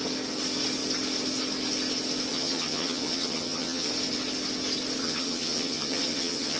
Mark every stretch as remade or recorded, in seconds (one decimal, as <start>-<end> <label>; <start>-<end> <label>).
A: 0.0-2.3 recorded; 2.3-3.9 remade; 3.9-5.0 recorded; 5.0-6.6 remade